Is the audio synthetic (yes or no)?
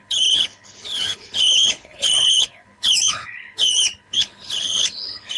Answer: yes